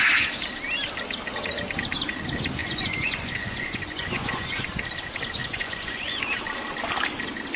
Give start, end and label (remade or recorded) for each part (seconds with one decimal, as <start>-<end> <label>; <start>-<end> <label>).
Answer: 0.0-2.6 recorded; 2.6-4.6 remade; 4.6-5.4 recorded; 5.4-6.2 remade; 6.2-7.6 recorded